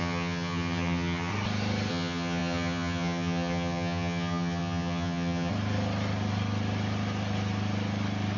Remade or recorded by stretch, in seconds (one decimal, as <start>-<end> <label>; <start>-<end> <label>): 0.0-1.3 remade; 1.3-1.9 recorded; 1.9-5.5 remade; 5.5-8.4 recorded